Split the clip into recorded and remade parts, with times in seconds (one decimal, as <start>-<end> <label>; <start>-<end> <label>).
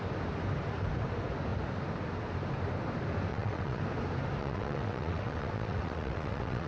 0.0-3.3 recorded; 3.3-3.8 remade; 3.8-4.4 recorded; 4.4-6.7 remade